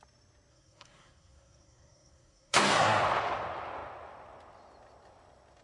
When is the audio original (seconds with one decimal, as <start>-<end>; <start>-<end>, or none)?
0.0-0.5; 3.0-5.6